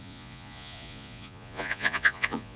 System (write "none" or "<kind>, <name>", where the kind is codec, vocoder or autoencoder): vocoder, Vocos